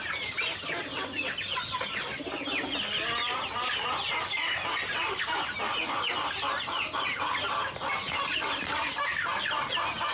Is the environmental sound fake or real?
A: real